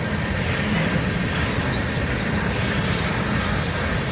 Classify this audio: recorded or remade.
recorded